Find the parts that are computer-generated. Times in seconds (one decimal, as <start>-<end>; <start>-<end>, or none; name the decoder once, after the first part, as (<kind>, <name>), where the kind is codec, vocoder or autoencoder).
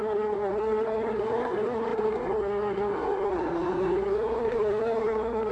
0.0-5.5 (codec, SNAC)